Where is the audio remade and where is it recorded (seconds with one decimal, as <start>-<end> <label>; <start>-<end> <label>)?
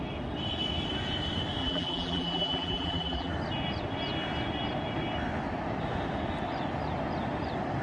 0.0-1.6 recorded; 1.6-3.3 remade; 3.3-7.8 recorded